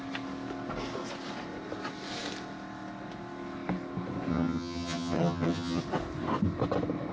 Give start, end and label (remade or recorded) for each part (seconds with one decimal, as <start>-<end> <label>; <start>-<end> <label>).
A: 0.0-4.3 recorded; 4.3-5.8 remade; 5.8-7.1 recorded